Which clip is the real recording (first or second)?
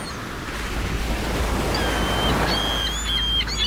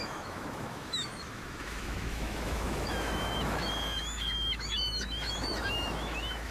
first